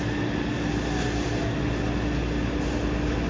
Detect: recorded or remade recorded